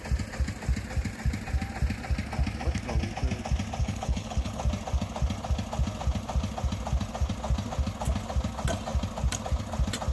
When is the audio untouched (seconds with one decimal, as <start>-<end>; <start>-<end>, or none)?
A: 0.0-3.8; 4.6-10.1